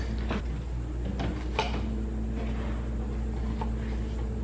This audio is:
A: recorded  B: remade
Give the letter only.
A